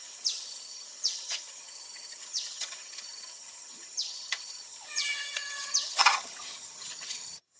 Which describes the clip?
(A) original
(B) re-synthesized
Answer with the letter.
B